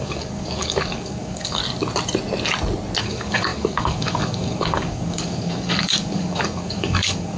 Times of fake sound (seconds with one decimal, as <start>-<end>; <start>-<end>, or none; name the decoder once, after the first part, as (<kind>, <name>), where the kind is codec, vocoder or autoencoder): 0.0-1.6 (codec, DAC); 3.0-7.4